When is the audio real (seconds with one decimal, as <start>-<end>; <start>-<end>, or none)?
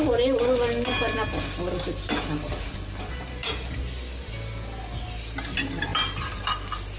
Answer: 0.0-7.0